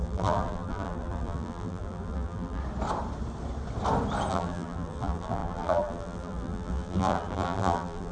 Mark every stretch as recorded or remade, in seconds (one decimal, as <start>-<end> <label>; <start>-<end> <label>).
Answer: 0.0-2.6 remade; 2.6-4.3 recorded; 4.3-8.1 remade